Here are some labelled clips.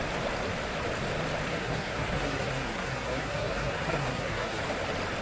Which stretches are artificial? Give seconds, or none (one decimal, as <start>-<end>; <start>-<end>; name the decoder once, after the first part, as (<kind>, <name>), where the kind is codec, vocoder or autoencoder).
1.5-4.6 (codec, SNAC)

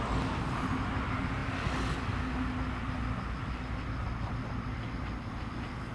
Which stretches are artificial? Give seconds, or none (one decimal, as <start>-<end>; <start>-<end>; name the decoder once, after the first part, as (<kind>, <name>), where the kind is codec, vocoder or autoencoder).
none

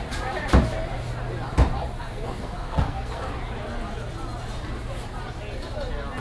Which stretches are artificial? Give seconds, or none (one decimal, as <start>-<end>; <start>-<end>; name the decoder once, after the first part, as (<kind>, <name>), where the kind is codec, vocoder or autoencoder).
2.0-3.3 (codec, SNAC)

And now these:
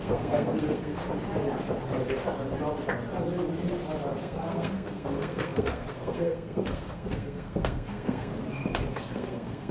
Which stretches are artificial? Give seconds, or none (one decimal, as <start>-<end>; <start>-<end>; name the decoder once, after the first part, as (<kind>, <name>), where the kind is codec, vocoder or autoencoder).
0.0-1.0 (codec, SNAC); 4.2-8.3; 8.9-9.7

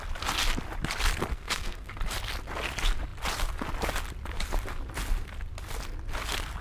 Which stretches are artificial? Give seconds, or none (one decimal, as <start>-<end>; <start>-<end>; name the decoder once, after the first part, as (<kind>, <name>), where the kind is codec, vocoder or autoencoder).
1.3-2.0 (codec, SNAC)

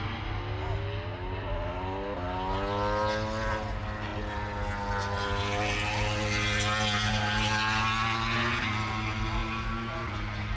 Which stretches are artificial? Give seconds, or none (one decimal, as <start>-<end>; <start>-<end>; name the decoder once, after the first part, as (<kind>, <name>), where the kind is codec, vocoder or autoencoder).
none